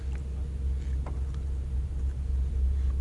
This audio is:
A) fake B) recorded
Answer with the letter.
B